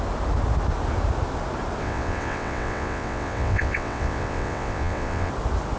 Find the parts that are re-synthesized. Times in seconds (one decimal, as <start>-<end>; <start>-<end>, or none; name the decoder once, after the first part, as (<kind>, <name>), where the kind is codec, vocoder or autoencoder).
1.8-5.3 (vocoder, WaveNeXt)